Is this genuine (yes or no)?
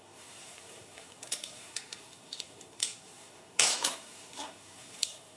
no